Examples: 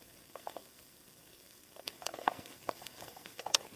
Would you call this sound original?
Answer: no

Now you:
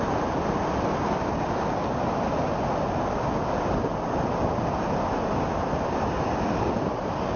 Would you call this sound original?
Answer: yes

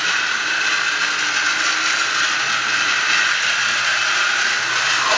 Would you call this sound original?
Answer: yes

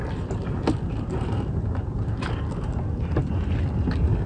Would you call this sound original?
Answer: yes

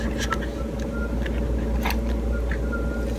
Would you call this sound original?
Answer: yes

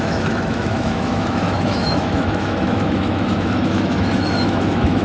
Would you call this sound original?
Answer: no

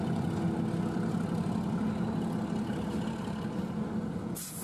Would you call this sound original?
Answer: yes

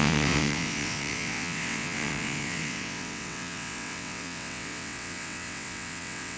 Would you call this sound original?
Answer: no